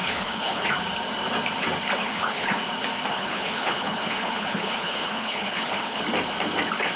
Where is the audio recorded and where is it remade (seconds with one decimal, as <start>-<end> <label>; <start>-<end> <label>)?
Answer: 0.0-0.7 remade; 0.7-2.0 recorded; 2.0-2.6 remade; 2.6-3.1 recorded; 3.1-6.0 remade; 6.0-7.0 recorded